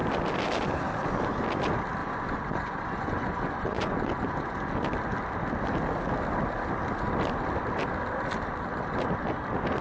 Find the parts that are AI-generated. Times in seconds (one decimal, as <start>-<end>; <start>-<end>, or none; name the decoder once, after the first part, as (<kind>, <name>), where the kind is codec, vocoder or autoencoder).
2.0-4.7 (vocoder, Vocos)